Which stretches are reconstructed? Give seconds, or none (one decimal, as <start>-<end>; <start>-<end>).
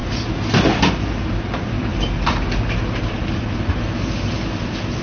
none